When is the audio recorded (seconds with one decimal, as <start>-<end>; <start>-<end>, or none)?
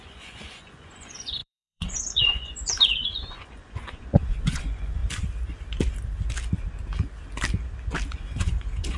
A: 5.0-8.1